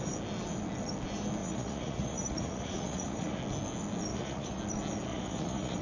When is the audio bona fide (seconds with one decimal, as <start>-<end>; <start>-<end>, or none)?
0.0-1.4; 3.4-4.1; 4.6-5.1